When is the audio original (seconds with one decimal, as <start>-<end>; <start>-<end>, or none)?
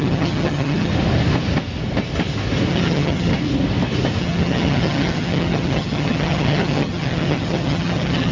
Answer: 0.9-2.7; 3.3-4.2